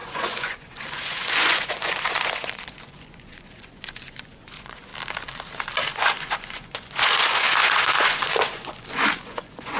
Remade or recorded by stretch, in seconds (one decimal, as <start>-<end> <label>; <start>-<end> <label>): 0.0-4.9 remade; 4.9-5.9 recorded; 5.9-9.8 remade